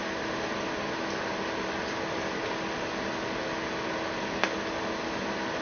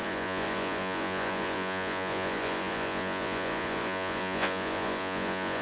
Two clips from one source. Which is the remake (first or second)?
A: second